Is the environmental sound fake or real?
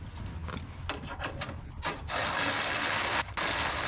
real